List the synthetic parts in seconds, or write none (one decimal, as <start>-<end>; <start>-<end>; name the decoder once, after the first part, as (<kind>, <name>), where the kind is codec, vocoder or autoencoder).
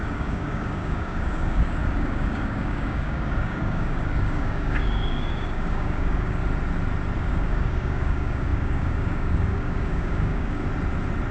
0.0-6.4 (codec, DAC); 7.2-10.6